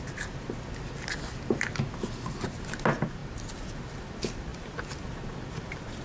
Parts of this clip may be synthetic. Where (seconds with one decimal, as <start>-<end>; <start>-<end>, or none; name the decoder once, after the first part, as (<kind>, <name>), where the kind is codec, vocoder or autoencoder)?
3.2-3.8 (vocoder, BigVGAN v2)